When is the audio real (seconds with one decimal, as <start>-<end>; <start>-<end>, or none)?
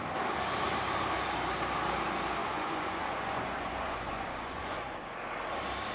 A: 0.0-2.4; 5.0-5.9